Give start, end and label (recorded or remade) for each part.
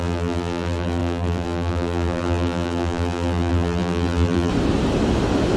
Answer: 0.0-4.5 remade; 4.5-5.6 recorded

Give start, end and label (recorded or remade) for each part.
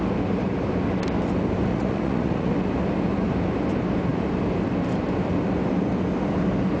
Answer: 0.0-1.7 recorded; 1.7-2.5 remade; 2.5-6.8 recorded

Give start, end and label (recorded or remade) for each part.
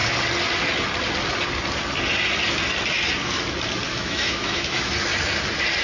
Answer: 0.0-3.9 recorded; 3.9-4.9 remade; 4.9-5.8 recorded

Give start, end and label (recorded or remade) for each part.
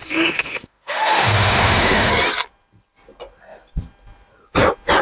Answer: 0.0-2.1 remade; 2.1-5.0 recorded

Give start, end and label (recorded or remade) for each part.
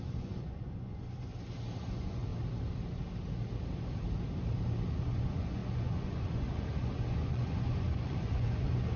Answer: 0.0-1.3 remade; 1.3-1.9 recorded; 1.9-2.3 remade; 2.3-5.0 recorded; 5.0-9.0 remade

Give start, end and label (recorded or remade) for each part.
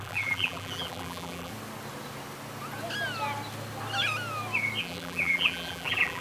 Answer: 0.0-1.5 remade; 1.5-4.8 recorded; 4.8-6.2 remade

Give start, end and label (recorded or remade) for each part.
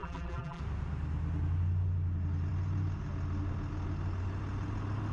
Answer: 0.0-0.6 remade; 0.6-5.1 recorded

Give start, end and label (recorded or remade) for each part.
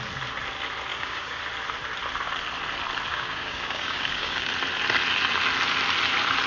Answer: 0.0-0.9 recorded; 0.9-1.4 remade; 1.4-3.1 recorded; 3.1-4.5 remade; 4.5-6.5 recorded